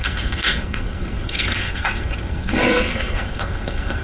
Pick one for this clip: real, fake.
fake